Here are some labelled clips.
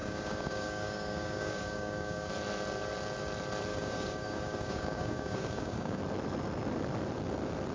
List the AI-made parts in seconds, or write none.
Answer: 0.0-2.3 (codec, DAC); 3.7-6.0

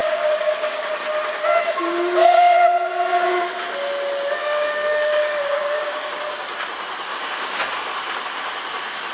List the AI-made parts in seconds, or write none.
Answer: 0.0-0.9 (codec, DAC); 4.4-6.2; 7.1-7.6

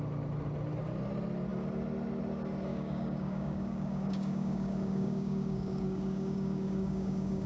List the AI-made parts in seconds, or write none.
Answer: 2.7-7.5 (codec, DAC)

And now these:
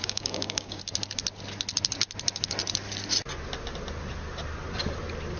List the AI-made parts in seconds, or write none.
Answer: 0.0-0.8 (codec, DAC)